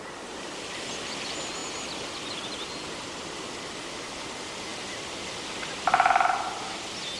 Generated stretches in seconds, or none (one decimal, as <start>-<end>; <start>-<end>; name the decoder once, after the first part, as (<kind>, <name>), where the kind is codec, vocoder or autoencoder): none